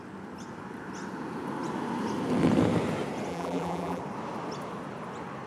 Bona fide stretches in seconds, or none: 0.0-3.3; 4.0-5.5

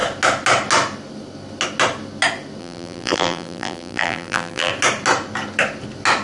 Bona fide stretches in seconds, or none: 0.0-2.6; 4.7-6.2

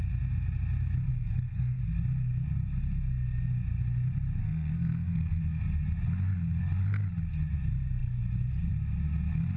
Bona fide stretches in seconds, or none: 0.0-1.1; 1.8-4.4; 5.4-9.6

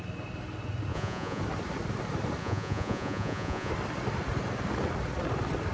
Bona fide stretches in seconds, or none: 0.0-0.9; 1.4-2.4; 3.7-5.7

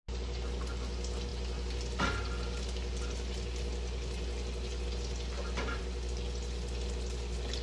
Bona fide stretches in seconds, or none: 0.0-7.6

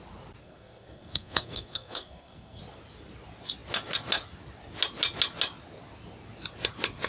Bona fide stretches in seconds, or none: 0.0-0.4; 2.6-7.1

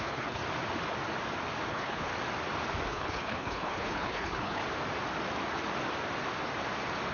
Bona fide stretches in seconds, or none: 0.4-1.7; 2.1-2.9; 4.6-7.1

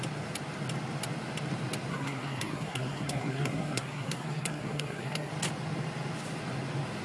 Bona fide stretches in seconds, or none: 0.0-1.9; 5.3-7.0